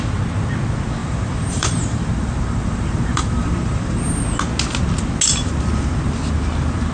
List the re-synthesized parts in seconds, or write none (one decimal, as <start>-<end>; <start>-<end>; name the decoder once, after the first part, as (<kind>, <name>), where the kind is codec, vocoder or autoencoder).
1.0-4.2 (vocoder, BigVGAN v2)